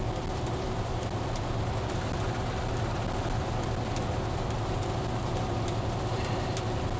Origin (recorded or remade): recorded